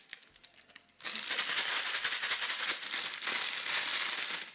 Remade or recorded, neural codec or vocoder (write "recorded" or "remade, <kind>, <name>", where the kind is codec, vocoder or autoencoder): recorded